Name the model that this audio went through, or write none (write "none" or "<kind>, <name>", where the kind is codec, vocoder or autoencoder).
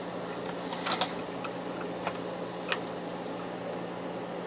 none